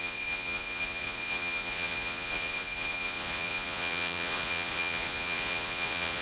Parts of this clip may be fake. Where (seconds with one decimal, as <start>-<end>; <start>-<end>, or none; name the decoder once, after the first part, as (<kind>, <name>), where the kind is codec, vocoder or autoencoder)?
0.0-6.2 (vocoder, Vocos)